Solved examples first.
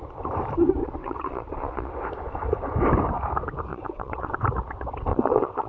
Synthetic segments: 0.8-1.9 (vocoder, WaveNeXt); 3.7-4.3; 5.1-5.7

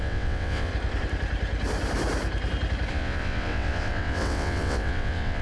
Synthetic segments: 0.0-0.7 (vocoder, WaveNeXt); 2.9-5.4

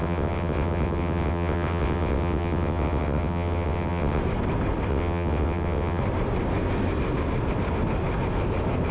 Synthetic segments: 0.0-4.2 (vocoder, WaveNeXt); 4.9-6.0

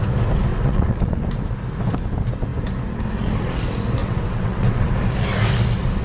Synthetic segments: 0.5-1.2 (vocoder, WaveNeXt); 4.0-4.9

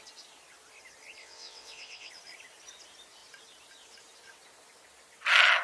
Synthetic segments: 1.2-2.1 (vocoder, WaveNeXt)

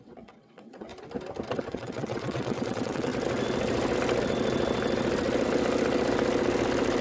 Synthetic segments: 0.0-0.9 (vocoder, WaveNeXt); 1.6-3.1

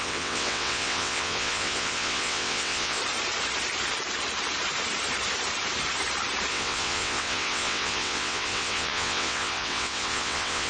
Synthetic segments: 0.0-3.0 (vocoder, WaveNeXt); 6.5-10.7

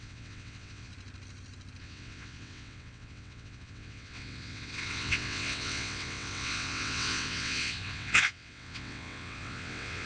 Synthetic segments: 0.0-0.9 (vocoder, WaveNeXt); 1.8-10.1